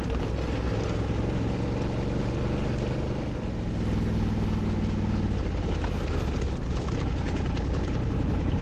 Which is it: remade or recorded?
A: recorded